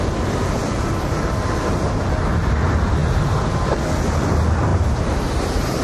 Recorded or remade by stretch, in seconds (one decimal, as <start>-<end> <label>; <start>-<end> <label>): 0.0-4.7 recorded; 4.7-5.8 remade

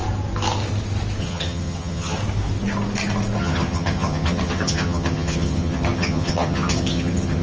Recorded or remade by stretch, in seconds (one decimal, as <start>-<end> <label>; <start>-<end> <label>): 0.0-1.2 recorded; 1.2-2.2 remade; 2.2-3.4 recorded; 3.4-7.4 remade

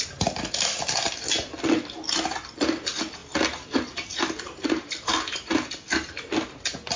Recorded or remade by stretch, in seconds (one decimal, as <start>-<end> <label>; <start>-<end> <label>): 0.0-7.0 recorded

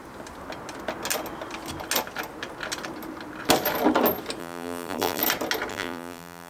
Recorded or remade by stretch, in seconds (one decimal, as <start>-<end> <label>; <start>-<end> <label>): 0.0-4.4 recorded; 4.4-5.2 remade; 5.2-5.7 recorded; 5.7-6.5 remade

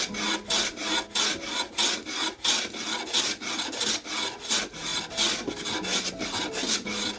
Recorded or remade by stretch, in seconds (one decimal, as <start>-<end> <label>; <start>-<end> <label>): 0.0-7.2 recorded

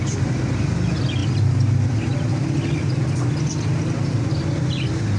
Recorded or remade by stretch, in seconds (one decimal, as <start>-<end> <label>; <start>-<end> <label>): 0.0-5.2 recorded

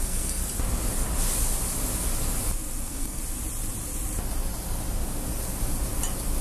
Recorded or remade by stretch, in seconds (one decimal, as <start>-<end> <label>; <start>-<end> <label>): 0.0-0.4 remade; 0.4-2.8 recorded; 2.8-3.2 remade; 3.2-6.4 recorded

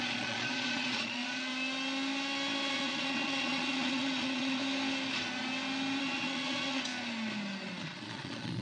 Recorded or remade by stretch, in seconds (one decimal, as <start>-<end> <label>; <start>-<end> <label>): 0.0-1.5 remade; 1.5-2.7 recorded; 2.7-4.6 remade; 4.6-6.0 recorded; 6.0-6.9 remade; 6.9-7.8 recorded; 7.8-8.6 remade